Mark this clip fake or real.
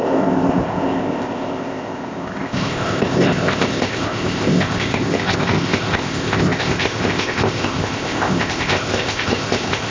fake